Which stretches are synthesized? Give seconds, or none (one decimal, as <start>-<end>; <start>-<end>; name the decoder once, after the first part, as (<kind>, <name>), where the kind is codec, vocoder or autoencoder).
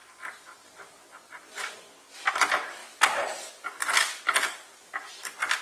4.0-5.0 (vocoder, BigVGAN v2)